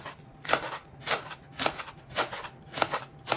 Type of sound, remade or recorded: recorded